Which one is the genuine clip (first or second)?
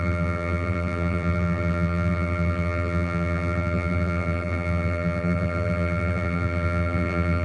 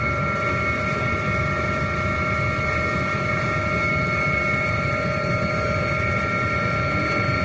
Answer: second